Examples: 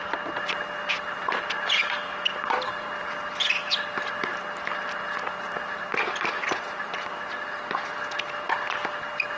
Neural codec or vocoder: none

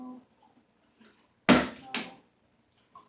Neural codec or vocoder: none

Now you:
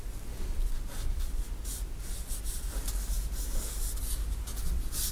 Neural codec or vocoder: none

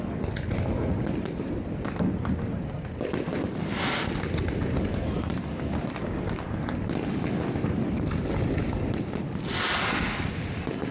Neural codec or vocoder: none